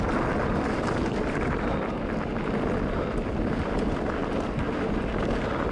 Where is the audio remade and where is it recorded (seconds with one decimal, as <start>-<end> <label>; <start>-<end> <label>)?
0.0-5.7 recorded